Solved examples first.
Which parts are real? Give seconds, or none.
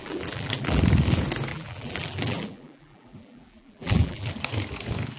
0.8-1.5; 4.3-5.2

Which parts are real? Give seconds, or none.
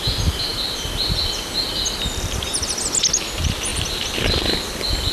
0.0-3.7